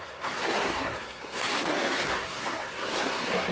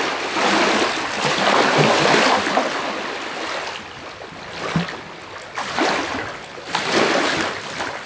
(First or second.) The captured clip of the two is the second